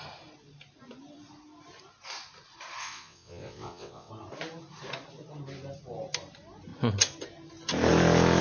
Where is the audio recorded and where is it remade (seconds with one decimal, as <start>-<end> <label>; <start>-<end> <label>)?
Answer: 0.0-2.8 recorded; 2.8-4.1 remade; 4.1-8.4 recorded